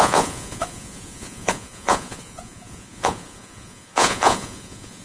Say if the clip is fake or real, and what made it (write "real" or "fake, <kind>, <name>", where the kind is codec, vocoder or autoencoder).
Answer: fake, vocoder, Vocos